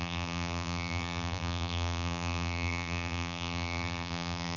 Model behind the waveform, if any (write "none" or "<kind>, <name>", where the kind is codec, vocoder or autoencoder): vocoder, BigVGAN v2